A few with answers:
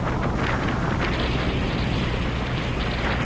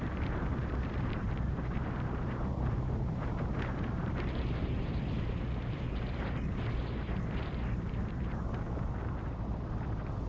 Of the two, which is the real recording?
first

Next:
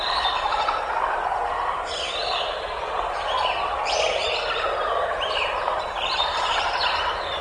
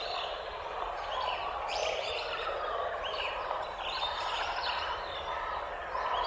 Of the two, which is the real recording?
first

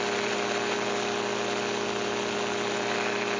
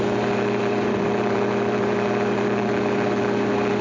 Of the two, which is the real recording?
first